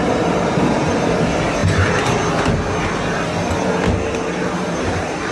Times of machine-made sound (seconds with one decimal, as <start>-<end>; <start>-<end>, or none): 0.0-1.6; 4.8-5.3